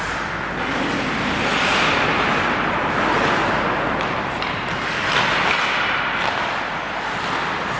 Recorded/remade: recorded